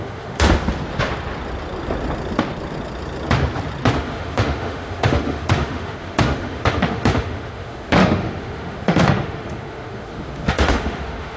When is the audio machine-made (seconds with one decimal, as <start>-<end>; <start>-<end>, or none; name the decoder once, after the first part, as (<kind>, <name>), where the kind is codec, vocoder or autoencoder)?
0.0-0.6 (autoencoder, DAC-VAE); 4.0-11.4